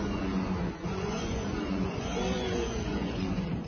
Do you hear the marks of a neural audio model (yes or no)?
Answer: yes